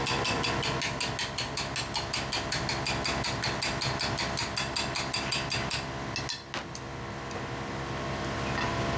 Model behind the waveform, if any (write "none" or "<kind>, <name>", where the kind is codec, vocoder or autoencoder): none